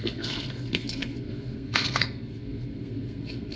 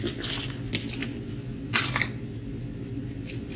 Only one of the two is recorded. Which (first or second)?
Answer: second